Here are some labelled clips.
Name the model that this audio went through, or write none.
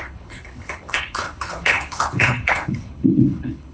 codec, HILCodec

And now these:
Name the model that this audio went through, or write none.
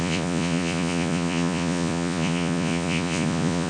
vocoder, Vocos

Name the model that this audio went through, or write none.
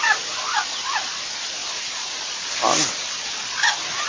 none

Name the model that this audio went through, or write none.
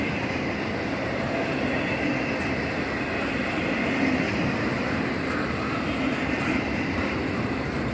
none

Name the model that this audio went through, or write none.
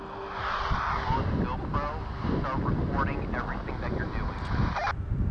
none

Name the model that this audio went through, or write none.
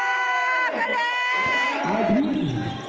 none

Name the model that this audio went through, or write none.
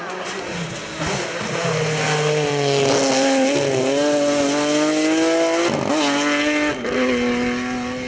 none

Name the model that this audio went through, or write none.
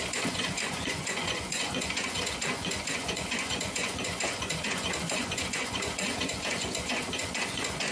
vocoder, Vocos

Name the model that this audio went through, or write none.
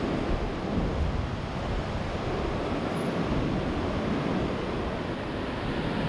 none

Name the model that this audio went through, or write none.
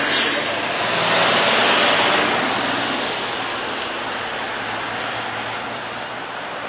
none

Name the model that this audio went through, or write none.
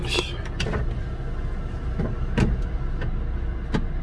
none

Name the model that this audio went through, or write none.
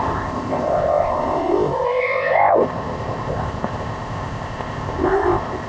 codec, ZipCodec